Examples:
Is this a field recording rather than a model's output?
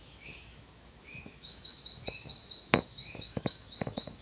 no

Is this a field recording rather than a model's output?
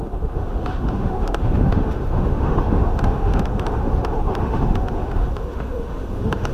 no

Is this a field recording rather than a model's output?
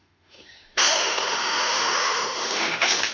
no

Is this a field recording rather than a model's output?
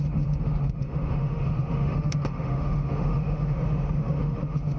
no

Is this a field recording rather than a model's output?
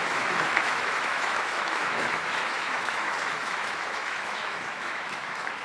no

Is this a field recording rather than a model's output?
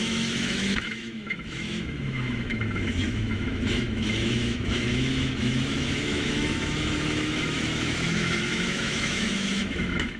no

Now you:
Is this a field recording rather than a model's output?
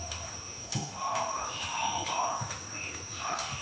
no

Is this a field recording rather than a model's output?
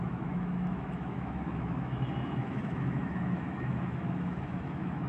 no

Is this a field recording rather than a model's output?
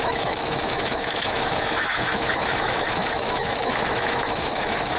no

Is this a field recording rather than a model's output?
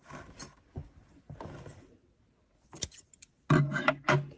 yes